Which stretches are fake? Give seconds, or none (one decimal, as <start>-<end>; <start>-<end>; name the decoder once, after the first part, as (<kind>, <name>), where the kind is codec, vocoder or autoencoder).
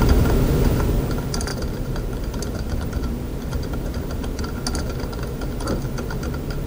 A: 1.5-4.4 (vocoder, BigVGAN v2)